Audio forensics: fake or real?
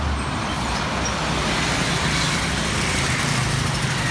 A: real